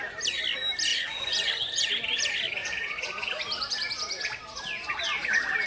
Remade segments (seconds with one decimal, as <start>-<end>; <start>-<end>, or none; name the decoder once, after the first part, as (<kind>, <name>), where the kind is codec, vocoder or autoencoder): 0.9-1.9 (vocoder, Vocos); 2.6-3.3